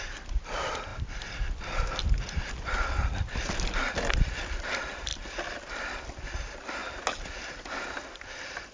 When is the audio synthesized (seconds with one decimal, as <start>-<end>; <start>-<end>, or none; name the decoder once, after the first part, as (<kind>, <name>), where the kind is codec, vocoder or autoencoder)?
0.0-0.9 (vocoder, BigVGAN v2); 2.5-6.8; 7.4-8.7